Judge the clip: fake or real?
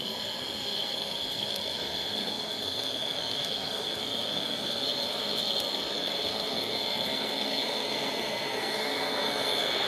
fake